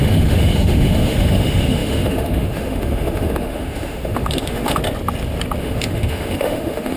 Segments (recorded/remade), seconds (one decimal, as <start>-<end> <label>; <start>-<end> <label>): 0.0-4.8 remade; 4.8-5.6 recorded; 5.6-7.0 remade